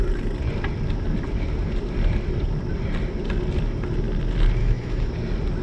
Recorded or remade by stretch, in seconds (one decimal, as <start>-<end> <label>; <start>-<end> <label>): 0.0-4.6 recorded; 4.6-5.1 remade; 5.1-5.6 recorded